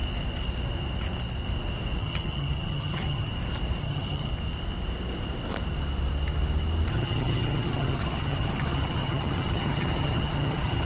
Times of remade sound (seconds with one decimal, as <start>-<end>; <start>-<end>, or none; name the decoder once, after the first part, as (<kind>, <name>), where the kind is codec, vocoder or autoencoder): 2.0-3.3 (vocoder, HiFi-GAN); 3.8-4.3; 6.9-10.9